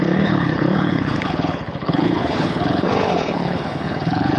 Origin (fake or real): fake